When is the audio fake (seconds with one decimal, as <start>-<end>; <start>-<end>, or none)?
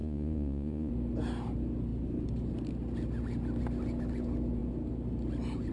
0.0-0.9